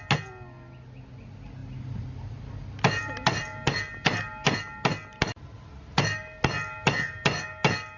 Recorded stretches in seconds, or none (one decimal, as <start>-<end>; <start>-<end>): 0.0-8.0